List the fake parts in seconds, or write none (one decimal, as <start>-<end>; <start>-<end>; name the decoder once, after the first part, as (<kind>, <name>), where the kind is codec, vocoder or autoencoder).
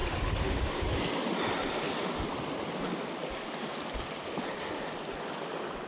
0.0-1.0 (codec, DAC)